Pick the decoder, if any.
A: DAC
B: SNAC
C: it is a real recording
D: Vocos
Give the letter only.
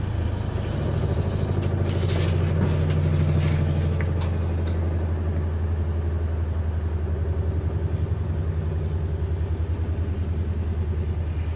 C